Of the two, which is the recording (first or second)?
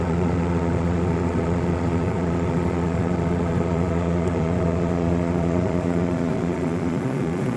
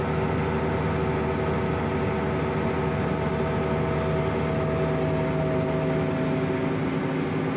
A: second